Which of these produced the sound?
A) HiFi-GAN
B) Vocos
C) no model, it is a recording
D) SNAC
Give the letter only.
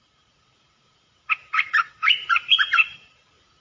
B